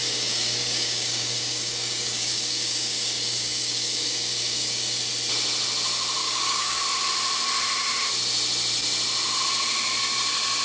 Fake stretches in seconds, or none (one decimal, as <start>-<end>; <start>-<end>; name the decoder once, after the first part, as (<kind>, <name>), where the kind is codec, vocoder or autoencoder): 0.0-5.0 (codec, DAC); 6.2-6.8